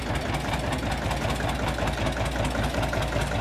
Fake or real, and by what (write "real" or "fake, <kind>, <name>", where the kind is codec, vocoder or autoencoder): real